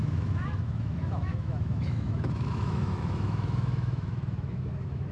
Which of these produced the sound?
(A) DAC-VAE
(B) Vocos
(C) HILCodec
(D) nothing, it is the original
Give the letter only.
A